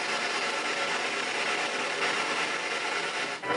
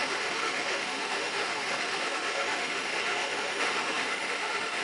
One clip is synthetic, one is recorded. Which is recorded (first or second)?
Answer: first